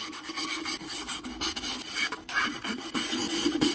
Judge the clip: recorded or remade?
recorded